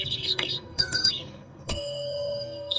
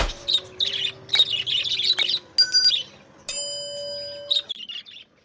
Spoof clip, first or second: first